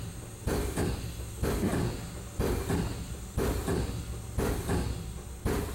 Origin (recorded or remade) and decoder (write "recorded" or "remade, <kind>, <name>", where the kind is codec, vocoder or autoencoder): recorded